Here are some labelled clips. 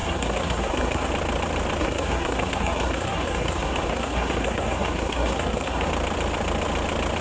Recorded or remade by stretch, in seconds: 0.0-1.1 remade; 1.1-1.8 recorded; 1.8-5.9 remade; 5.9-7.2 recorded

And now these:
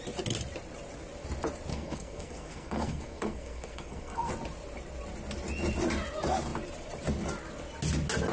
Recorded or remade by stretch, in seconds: 0.0-1.7 recorded; 1.7-4.3 remade; 4.3-8.3 recorded

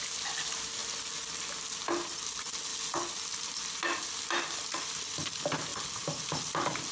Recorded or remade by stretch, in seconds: 0.0-6.9 recorded